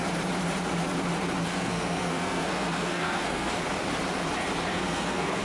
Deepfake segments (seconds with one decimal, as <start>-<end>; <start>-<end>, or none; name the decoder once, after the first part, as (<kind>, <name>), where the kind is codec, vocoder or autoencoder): 1.5-3.5 (codec, SNAC); 4.7-5.4